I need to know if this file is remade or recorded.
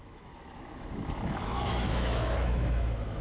remade